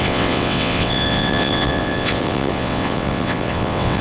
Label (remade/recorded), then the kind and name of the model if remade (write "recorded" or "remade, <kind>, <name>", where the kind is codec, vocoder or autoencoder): remade, vocoder, WaveNeXt